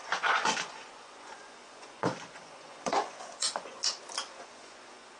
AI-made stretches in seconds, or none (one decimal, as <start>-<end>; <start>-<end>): 0.0-3.8; 4.3-5.2